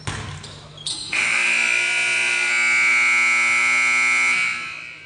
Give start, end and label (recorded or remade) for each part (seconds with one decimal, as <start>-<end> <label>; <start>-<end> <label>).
0.0-0.9 recorded; 0.9-2.5 remade; 2.5-5.1 recorded